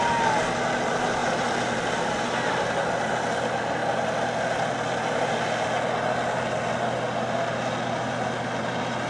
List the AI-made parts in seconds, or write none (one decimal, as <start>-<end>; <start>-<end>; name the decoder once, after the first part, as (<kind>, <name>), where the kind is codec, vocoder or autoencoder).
none